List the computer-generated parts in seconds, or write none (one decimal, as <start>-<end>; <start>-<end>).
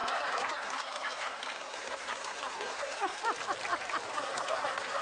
0.0-3.2; 4.1-5.0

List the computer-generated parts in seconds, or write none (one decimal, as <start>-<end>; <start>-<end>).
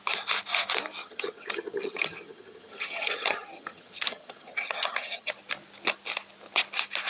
1.0-5.3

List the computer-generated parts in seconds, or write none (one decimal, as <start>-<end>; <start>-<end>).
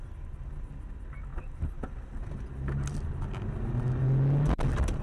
none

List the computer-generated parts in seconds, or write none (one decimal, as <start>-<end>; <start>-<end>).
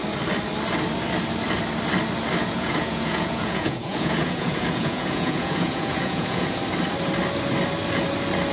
2.4-6.6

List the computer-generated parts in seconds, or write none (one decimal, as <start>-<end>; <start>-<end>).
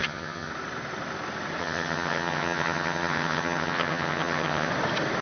0.0-0.5; 1.6-4.7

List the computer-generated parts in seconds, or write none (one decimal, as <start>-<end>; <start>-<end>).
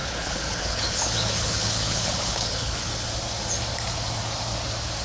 0.0-2.9